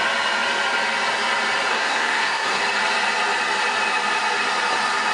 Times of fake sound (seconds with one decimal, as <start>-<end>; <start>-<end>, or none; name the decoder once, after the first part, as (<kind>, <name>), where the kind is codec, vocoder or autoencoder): 1.7-2.6 (codec, SNAC)